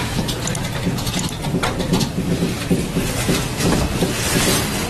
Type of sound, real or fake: real